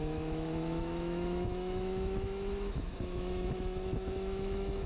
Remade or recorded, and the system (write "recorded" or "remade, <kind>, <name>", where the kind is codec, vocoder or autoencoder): remade, autoencoder, DAC-VAE